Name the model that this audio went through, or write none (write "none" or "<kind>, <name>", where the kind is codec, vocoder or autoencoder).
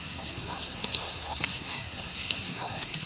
codec, SNAC